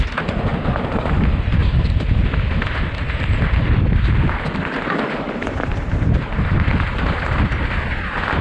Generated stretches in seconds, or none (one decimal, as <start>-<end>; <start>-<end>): 0.0-8.4